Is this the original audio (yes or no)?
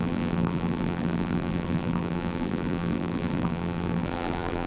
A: no